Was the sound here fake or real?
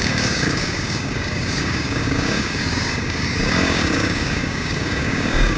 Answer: fake